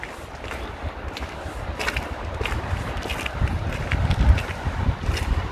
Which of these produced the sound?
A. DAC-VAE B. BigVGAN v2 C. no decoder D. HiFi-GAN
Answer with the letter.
C